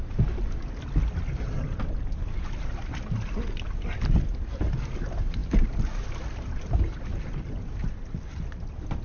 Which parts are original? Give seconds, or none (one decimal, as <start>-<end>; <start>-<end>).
0.0-9.0